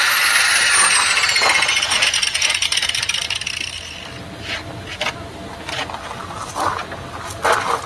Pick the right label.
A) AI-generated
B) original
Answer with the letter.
B